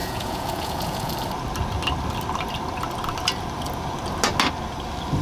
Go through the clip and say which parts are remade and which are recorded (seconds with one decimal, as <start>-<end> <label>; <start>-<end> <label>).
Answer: 0.0-1.1 remade; 1.1-5.2 recorded